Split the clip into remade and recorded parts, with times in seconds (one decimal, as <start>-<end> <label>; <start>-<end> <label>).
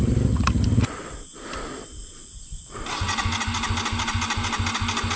0.0-5.2 recorded